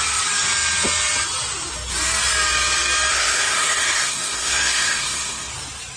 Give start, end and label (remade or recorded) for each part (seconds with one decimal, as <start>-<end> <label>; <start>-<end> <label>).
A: 0.0-3.1 recorded; 3.1-5.5 remade; 5.5-6.0 recorded